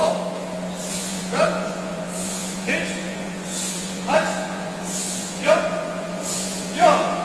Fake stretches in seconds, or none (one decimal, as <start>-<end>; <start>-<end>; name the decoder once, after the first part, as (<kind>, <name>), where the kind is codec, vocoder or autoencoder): 0.9-7.2 (vocoder, Vocos)